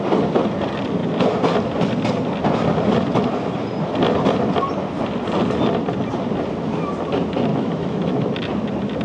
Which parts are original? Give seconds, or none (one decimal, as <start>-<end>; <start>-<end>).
0.0-7.5; 8.3-9.0